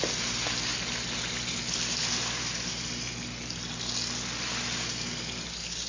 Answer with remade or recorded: recorded